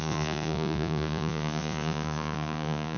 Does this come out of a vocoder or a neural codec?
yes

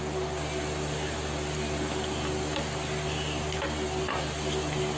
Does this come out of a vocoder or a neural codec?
no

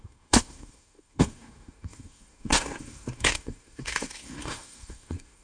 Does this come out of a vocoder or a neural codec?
yes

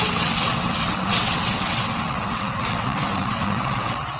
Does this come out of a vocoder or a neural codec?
yes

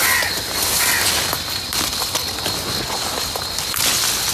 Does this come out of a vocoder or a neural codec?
no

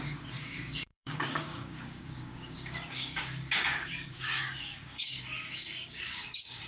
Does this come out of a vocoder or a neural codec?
yes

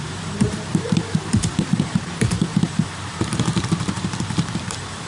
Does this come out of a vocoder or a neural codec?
yes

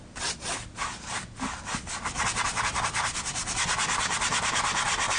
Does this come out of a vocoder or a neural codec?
no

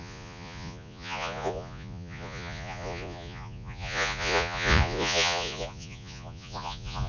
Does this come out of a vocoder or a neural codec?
yes